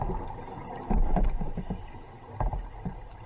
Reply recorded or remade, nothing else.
recorded